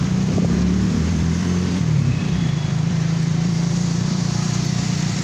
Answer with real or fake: fake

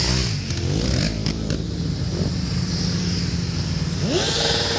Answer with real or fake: real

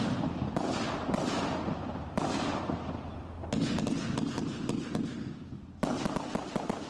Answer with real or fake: real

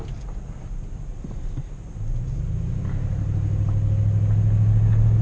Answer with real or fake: real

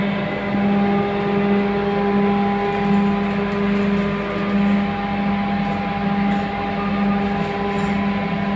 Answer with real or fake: real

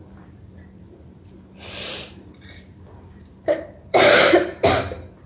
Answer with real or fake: fake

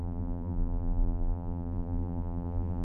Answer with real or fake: fake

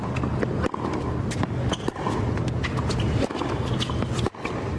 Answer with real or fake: real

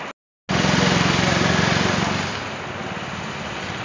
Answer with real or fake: real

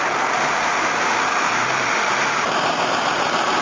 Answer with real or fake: fake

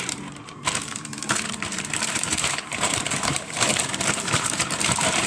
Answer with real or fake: fake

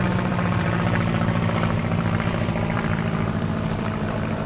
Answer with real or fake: fake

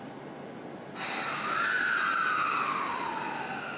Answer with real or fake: real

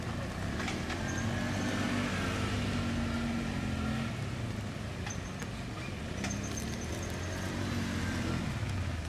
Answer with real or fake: real